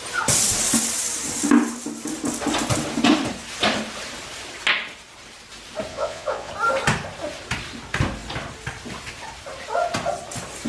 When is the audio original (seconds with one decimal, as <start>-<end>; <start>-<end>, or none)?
0.0-5.9; 6.5-10.7